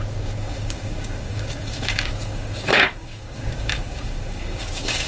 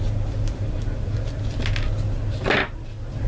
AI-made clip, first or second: first